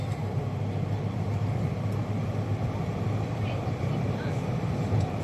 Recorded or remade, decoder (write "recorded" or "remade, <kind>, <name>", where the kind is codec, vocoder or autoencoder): remade, vocoder, BigVGAN v2